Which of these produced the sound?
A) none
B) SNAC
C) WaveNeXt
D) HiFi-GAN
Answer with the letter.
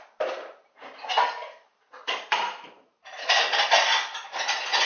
A